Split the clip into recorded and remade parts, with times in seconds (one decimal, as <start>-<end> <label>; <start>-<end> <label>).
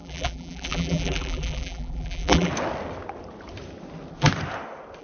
0.0-2.5 remade; 2.5-5.0 recorded